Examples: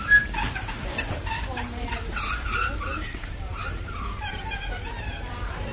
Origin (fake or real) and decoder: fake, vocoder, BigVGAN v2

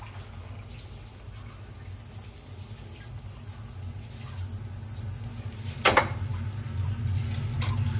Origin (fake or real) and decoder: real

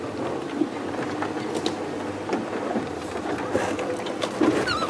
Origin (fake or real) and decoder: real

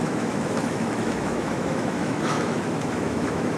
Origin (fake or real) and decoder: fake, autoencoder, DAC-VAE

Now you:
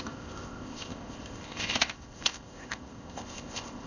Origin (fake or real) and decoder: fake, codec, ZipCodec